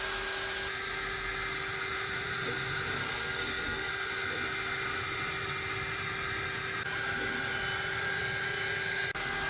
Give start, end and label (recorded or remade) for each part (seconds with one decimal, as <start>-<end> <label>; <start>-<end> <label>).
0.0-3.0 recorded; 3.0-3.9 remade; 3.9-9.5 recorded

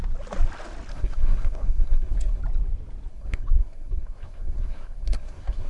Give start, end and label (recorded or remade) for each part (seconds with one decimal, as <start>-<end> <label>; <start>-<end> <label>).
0.0-0.9 recorded; 0.9-2.4 remade; 2.4-3.1 recorded; 3.1-5.7 remade